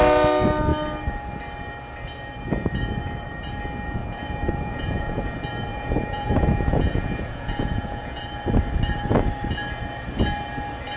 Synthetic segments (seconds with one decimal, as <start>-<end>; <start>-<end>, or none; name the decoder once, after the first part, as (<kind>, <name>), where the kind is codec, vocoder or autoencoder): 4.0-5.2 (vocoder, Vocos); 5.7-8.2